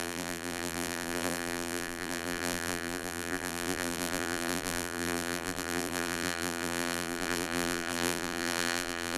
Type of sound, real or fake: fake